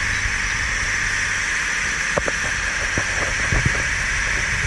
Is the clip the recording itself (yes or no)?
yes